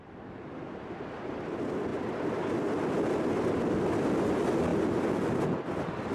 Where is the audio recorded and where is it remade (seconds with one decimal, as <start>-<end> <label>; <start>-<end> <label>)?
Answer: 0.0-6.1 recorded